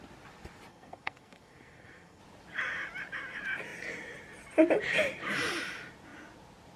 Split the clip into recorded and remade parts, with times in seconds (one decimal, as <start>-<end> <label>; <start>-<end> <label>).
0.0-0.7 recorded; 0.7-2.2 remade; 2.2-6.8 recorded